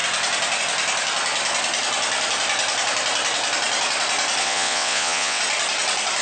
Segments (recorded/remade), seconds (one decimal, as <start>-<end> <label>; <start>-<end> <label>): 0.0-4.4 recorded; 4.4-5.4 remade; 5.4-6.2 recorded